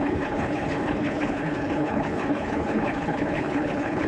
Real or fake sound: fake